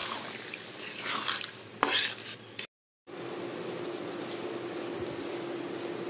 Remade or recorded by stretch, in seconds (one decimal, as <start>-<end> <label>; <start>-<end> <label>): 0.0-6.1 recorded